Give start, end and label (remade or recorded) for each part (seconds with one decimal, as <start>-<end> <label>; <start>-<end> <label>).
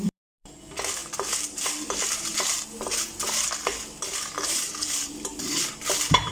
0.0-1.0 remade; 1.0-1.6 recorded; 1.6-2.3 remade; 2.3-5.7 recorded; 5.7-6.3 remade